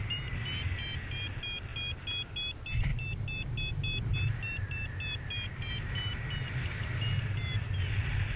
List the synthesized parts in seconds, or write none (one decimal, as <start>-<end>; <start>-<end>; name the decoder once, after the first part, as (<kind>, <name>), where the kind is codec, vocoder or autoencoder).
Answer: none